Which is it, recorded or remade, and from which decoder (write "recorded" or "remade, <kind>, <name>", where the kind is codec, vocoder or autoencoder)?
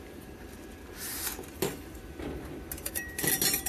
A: recorded